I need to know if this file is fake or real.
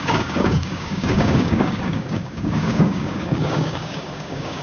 fake